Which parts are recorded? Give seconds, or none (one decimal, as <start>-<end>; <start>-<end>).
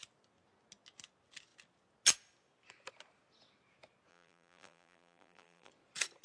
0.0-4.1; 5.7-6.2